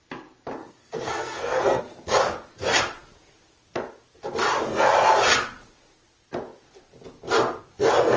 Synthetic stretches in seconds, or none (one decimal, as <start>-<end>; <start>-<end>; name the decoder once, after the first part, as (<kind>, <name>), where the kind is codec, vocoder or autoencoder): 0.6-1.8 (codec, SNAC)